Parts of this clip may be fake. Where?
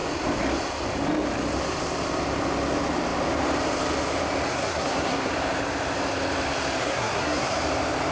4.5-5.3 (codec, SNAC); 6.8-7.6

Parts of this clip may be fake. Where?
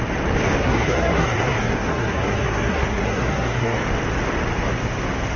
0.6-3.8 (codec, SNAC)